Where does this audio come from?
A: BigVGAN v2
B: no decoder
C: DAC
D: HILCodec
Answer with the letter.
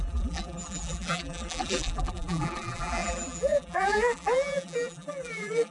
A